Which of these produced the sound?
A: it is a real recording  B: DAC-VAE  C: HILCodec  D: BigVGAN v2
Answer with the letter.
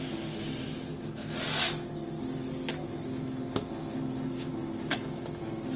A